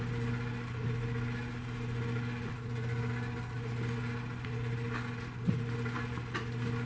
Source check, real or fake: real